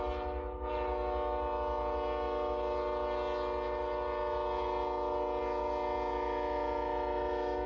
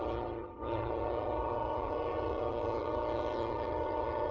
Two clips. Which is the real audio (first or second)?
first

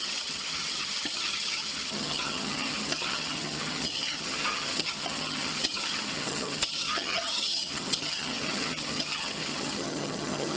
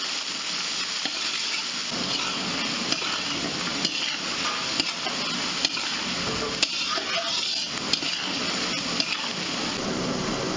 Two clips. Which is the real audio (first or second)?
second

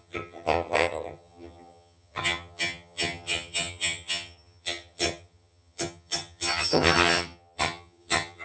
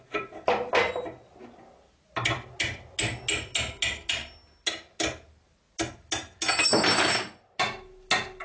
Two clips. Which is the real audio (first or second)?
second